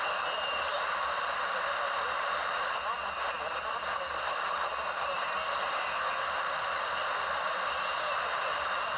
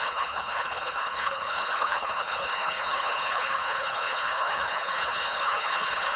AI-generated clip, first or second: second